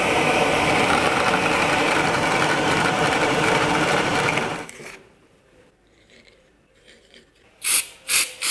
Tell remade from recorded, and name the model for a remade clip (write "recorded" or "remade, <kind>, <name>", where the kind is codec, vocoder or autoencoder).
remade, vocoder, BigVGAN v2